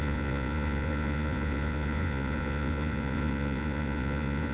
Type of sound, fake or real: fake